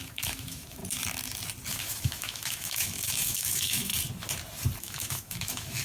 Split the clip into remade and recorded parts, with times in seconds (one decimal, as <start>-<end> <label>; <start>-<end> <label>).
0.0-0.8 remade; 0.8-1.7 recorded; 1.7-3.9 remade; 3.9-4.8 recorded; 4.8-5.8 remade